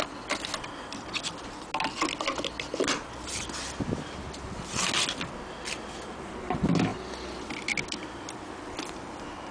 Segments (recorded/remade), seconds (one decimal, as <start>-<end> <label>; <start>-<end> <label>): 0.0-9.5 recorded